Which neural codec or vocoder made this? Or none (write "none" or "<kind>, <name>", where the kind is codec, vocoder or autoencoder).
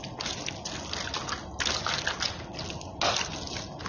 none